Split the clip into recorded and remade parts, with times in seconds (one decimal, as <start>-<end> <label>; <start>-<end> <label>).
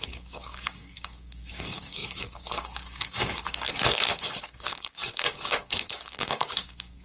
0.0-7.0 remade